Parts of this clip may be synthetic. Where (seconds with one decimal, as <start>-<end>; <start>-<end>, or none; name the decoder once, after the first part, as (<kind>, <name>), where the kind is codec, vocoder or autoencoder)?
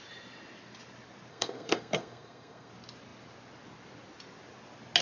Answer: 1.3-2.7 (codec, SNAC)